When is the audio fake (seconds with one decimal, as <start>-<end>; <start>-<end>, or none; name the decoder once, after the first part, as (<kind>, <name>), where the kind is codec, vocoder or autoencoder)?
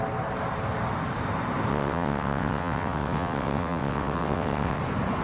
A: 1.7-4.8 (vocoder, WaveNeXt)